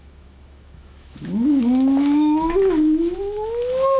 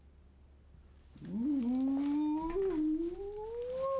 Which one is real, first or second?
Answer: second